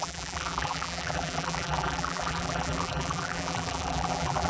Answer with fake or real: fake